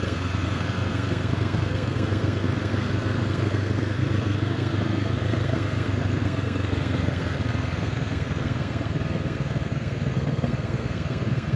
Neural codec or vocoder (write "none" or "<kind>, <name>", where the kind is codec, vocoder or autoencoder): codec, SNAC